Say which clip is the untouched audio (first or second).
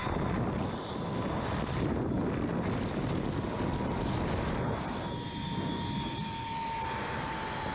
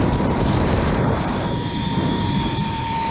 first